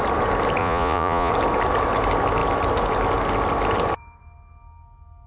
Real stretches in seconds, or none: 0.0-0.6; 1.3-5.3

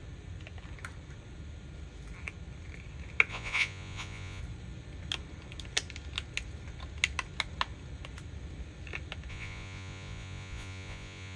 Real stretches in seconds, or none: 0.0-3.3; 4.4-9.3